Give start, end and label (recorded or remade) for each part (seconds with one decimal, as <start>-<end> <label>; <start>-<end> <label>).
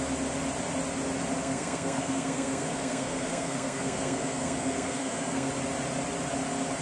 0.0-1.4 recorded; 1.4-5.5 remade; 5.5-6.8 recorded